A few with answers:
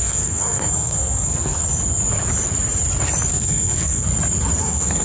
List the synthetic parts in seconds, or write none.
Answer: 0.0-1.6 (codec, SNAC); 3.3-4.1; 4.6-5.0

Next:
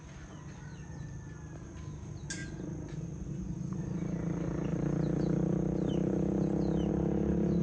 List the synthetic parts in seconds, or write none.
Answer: 4.7-6.9 (vocoder, BigVGAN v2)